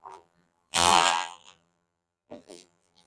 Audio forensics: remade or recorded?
remade